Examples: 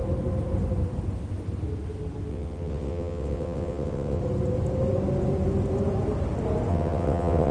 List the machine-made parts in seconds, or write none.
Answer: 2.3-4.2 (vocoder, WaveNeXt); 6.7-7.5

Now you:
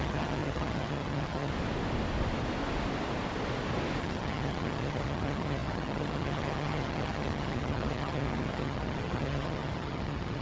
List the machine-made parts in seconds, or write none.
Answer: 0.0-1.5 (vocoder, HiFi-GAN); 4.0-10.4

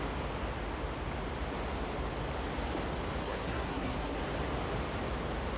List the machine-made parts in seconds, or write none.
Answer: 3.2-4.2 (codec, SNAC)

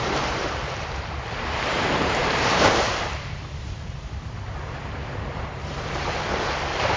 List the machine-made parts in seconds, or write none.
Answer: 0.0-7.0 (vocoder, BigVGAN v2)

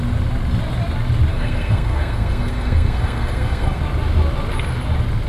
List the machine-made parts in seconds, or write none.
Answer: 1.3-3.8 (codec, SNAC)

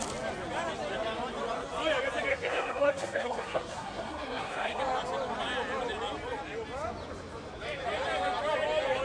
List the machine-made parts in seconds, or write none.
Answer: 2.3-4.8 (codec, SNAC)

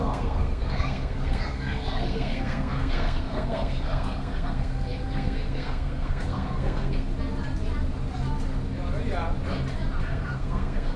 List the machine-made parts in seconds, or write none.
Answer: 0.0-7.1 (codec, SNAC); 10.0-11.0

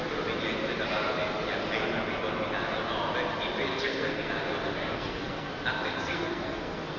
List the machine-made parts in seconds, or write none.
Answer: 3.7-4.3 (codec, SNAC); 4.8-5.5; 5.9-7.0